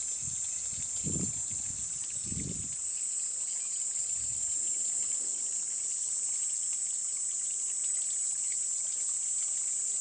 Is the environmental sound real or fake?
fake